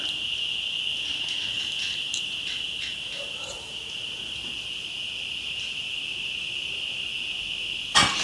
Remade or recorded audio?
recorded